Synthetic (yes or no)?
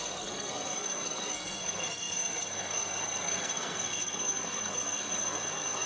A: yes